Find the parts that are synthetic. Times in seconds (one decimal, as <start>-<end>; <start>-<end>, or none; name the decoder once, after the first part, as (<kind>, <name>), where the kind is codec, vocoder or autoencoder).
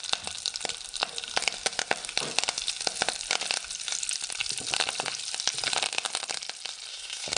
6.9-7.4 (codec, SNAC)